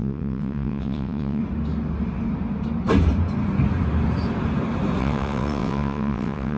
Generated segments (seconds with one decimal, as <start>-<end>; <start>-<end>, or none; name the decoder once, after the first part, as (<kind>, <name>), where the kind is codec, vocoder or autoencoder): 0.0-1.4 (vocoder, WaveNeXt); 5.0-6.6